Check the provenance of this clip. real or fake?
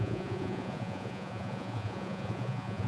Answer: fake